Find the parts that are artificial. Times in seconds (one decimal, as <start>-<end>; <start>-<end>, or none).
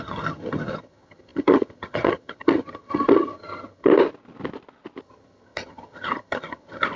0.0-3.9; 5.0-7.0